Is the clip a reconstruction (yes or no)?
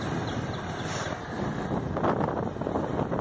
no